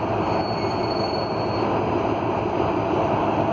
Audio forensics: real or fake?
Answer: real